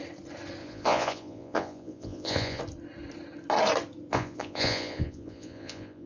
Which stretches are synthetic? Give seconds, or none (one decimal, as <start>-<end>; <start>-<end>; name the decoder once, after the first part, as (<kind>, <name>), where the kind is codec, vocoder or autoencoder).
0.6-2.6 (vocoder, Vocos); 4.1-6.1